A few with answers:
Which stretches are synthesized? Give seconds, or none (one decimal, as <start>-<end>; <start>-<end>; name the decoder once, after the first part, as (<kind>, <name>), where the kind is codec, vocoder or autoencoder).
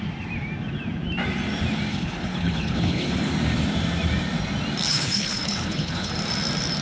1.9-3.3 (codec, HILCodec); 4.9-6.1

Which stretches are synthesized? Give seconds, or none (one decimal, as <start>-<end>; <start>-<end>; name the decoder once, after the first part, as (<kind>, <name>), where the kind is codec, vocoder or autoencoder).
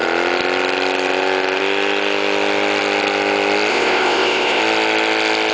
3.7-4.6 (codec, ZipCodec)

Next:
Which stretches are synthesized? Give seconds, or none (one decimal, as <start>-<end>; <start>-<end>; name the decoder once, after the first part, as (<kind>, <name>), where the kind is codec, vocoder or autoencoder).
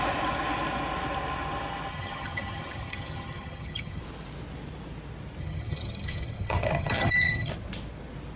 1.9-4.0 (vocoder, HiFi-GAN); 5.4-7.5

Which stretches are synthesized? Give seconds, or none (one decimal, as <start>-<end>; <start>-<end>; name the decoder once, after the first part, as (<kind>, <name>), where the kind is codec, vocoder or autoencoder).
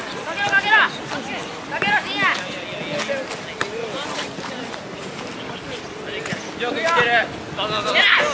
none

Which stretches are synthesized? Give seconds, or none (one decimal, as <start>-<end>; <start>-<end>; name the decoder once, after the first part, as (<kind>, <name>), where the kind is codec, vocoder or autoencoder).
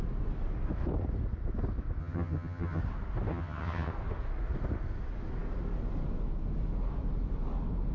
2.0-2.8 (vocoder, HiFi-GAN); 3.3-3.9